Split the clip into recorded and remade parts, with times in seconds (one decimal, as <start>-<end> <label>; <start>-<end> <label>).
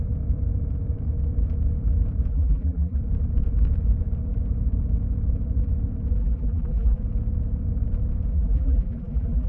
0.0-2.3 recorded; 2.3-3.0 remade; 3.0-6.2 recorded; 6.2-7.0 remade; 7.0-8.3 recorded; 8.3-9.5 remade